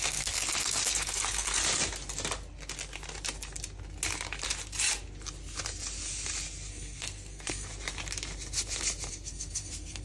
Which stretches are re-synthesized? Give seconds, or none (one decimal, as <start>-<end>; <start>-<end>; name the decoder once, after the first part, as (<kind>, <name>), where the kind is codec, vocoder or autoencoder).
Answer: 0.0-1.6 (codec, SNAC); 6.7-7.7; 9.1-10.0